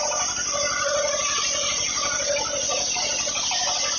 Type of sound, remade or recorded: recorded